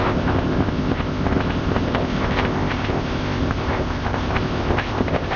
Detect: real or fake fake